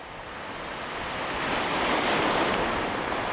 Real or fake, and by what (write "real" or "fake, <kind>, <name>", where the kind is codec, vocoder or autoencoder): real